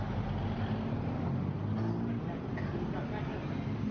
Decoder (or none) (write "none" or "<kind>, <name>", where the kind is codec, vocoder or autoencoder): none